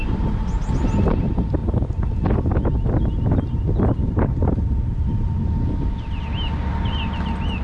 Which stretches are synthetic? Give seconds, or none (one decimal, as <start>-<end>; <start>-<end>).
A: none